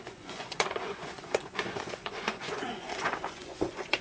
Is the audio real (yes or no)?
no